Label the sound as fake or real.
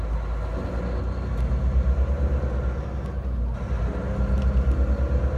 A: real